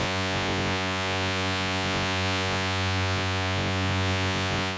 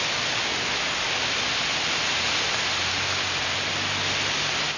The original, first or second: second